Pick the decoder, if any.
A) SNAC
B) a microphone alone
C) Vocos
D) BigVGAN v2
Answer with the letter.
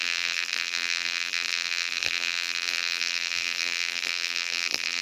D